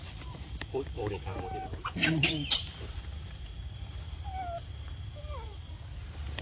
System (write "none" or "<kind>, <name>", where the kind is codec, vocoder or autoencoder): vocoder, BigVGAN v2